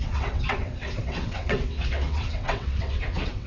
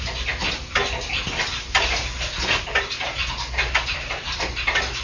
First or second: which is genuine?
second